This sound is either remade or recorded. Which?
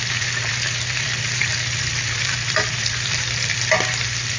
remade